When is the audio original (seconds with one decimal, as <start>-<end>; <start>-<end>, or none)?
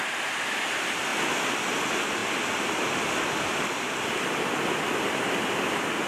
0.0-6.1